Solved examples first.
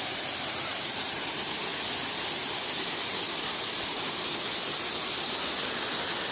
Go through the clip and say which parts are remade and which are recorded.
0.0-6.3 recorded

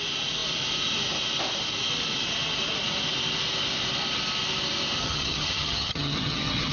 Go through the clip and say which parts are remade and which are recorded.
0.0-5.0 recorded; 5.0-6.7 remade

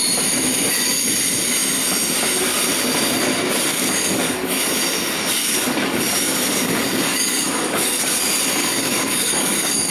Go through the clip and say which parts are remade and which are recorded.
0.0-3.7 recorded; 3.7-4.7 remade; 4.7-5.4 recorded; 5.4-8.2 remade; 8.2-8.6 recorded; 8.6-9.9 remade

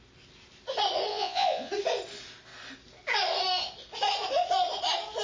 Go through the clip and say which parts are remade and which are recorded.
0.0-1.1 recorded; 1.1-1.7 remade; 1.7-5.2 recorded